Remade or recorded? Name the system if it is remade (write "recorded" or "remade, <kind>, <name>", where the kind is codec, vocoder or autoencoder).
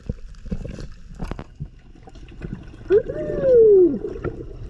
recorded